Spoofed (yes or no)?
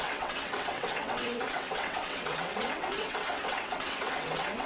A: yes